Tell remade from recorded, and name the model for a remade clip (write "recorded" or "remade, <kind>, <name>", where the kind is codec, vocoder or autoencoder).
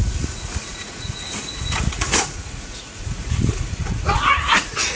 remade, vocoder, Vocos